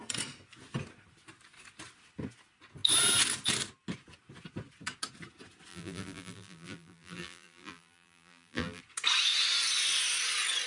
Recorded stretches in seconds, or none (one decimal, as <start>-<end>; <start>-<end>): 0.0-5.7; 8.8-10.7